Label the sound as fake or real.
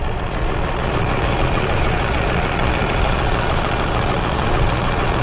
fake